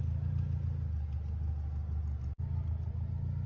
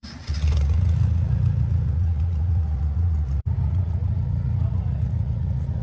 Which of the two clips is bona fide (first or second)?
first